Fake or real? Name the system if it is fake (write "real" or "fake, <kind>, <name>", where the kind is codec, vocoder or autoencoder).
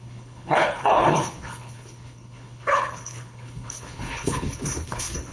fake, codec, HILCodec